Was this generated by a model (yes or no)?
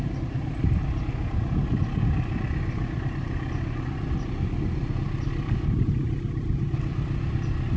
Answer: no